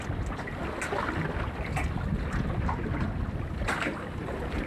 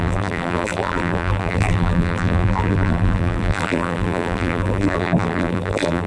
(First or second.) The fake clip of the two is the second